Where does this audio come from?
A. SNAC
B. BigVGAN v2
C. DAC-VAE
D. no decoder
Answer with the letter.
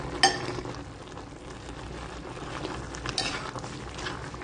D